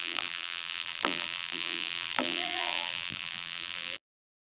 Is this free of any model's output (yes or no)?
no